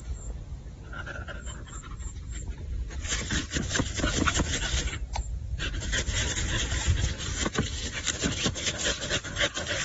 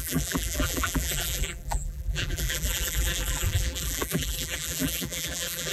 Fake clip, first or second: second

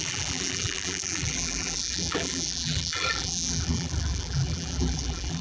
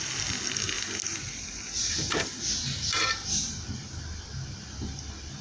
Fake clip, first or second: first